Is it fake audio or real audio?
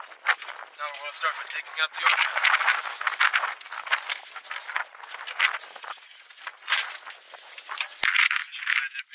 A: real